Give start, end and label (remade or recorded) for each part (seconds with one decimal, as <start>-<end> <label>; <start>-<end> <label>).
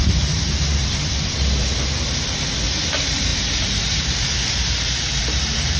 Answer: 0.0-5.8 remade